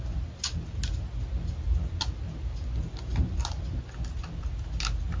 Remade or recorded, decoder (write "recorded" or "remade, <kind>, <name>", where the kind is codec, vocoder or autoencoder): recorded